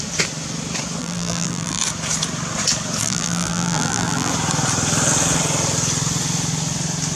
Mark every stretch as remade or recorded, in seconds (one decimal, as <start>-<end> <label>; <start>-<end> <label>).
0.0-1.0 recorded; 1.0-1.8 remade; 1.8-3.0 recorded; 3.0-4.3 remade; 4.3-7.2 recorded